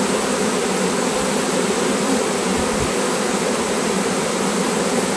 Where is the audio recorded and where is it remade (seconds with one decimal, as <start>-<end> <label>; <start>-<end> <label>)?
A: 0.0-2.4 recorded; 2.4-4.3 remade; 4.3-5.2 recorded